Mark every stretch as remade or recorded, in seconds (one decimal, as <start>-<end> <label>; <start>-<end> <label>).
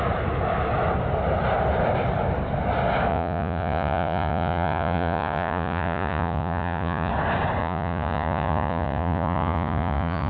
0.0-3.1 recorded; 3.1-7.1 remade; 7.1-7.6 recorded; 7.6-10.3 remade